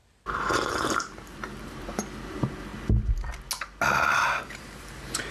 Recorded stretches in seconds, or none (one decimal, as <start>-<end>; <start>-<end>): 0.0-0.7; 2.7-4.5